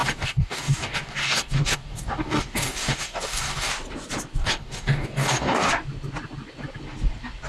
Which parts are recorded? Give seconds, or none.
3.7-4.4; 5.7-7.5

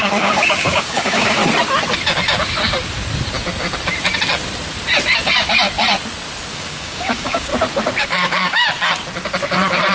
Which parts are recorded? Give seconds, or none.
1.4-6.5; 7.5-8.0; 8.6-9.9

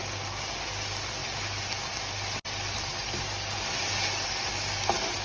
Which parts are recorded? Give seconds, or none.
0.0-5.2

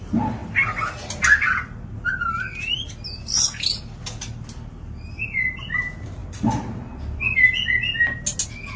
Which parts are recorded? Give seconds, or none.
0.0-8.8

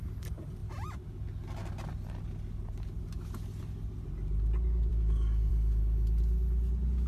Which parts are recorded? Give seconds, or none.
0.0-4.9; 5.5-7.1

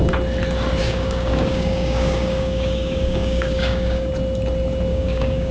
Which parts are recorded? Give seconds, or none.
0.0-0.8; 4.1-4.9

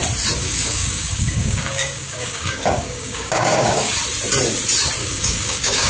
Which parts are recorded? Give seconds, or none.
0.0-0.4; 3.9-5.0